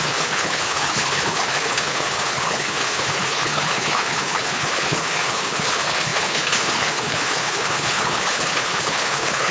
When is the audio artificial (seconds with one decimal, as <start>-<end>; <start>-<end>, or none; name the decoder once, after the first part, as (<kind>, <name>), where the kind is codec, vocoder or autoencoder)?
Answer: 0.0-9.5 (codec, HILCodec)